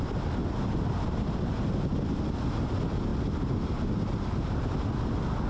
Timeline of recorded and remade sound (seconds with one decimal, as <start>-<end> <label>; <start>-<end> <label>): 0.0-5.5 recorded